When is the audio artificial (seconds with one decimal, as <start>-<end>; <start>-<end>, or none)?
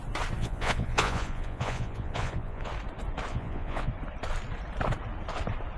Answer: 0.4-2.7; 3.3-3.9